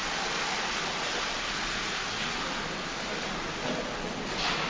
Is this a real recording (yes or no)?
yes